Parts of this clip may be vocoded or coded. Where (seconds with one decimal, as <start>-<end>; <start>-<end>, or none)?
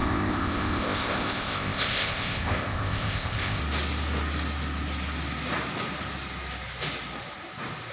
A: 0.0-3.6